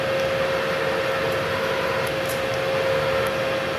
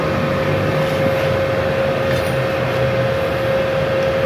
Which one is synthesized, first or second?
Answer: second